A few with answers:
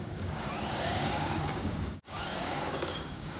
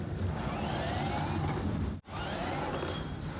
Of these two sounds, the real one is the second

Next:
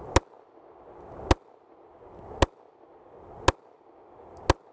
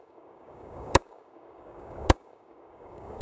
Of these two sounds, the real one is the first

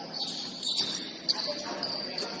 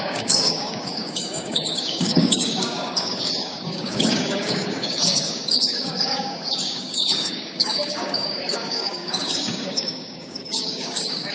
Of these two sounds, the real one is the first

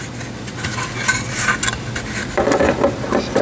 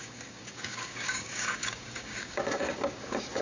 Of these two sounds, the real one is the first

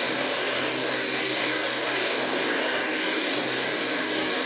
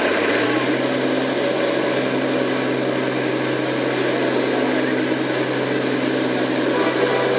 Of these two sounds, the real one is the second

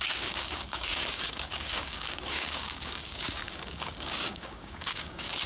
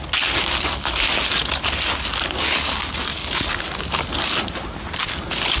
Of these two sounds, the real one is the second